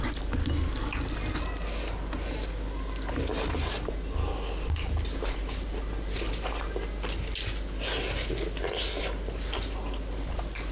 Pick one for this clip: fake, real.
real